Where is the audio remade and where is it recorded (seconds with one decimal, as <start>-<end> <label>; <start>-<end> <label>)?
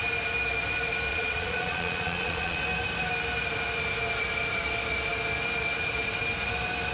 0.0-1.1 recorded; 1.1-2.6 remade; 2.6-6.9 recorded